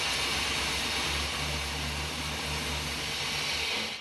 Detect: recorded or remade recorded